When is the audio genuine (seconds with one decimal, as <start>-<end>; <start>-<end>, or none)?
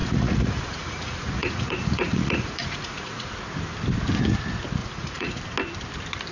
3.3-4.8; 5.4-6.3